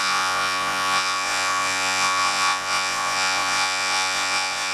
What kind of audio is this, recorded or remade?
remade